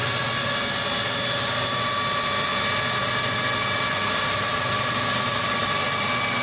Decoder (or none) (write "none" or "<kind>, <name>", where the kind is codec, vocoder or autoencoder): none